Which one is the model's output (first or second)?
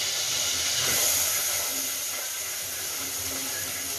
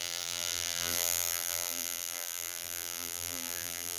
second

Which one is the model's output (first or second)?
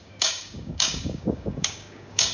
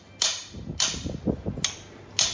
first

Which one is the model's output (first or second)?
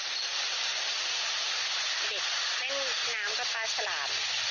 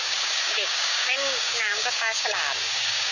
second